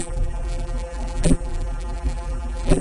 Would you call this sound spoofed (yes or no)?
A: yes